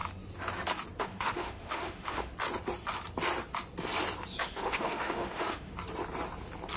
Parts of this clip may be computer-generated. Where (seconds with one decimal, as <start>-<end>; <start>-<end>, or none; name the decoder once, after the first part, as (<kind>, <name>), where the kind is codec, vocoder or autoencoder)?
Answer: 1.0-2.3 (autoencoder, DAC-VAE); 4.4-5.7